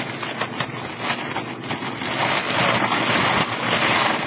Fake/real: real